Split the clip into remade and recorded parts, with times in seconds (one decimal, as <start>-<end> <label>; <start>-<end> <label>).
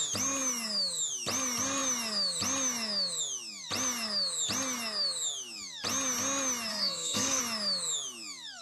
0.0-6.7 recorded; 6.7-7.4 remade; 7.4-8.6 recorded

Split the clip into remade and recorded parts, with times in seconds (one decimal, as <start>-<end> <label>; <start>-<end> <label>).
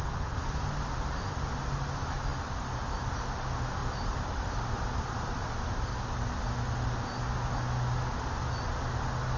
0.0-2.3 recorded; 2.3-3.1 remade; 3.1-3.8 recorded; 3.8-5.6 remade; 5.6-9.4 recorded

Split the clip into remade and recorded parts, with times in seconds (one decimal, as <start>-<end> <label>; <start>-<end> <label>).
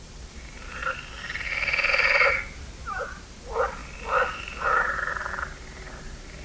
0.0-0.8 remade; 0.8-1.9 recorded; 1.9-3.8 remade; 3.8-4.3 recorded; 4.3-5.3 remade; 5.3-5.9 recorded; 5.9-6.4 remade